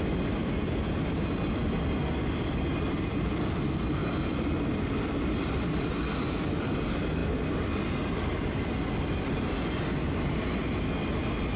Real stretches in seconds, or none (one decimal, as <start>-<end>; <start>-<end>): 0.0-11.6

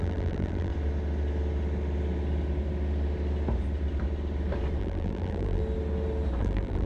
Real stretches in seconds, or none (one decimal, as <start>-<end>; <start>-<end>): 0.7-4.8; 5.6-6.4

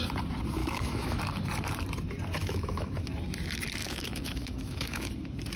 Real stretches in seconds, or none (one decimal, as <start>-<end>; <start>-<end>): 0.0-0.6; 1.2-2.4; 2.9-3.8; 5.1-5.6

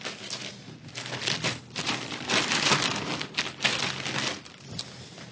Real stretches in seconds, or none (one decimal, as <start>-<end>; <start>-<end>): 0.0-5.3

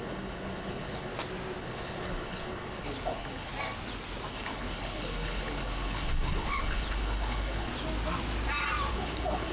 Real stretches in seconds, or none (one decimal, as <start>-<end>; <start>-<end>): 1.1-1.6; 3.5-4.3; 7.7-8.9

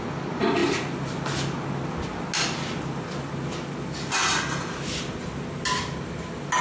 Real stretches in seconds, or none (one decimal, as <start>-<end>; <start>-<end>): 0.0-6.6